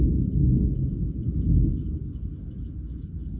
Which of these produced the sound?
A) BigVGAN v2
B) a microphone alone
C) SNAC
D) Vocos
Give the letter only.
B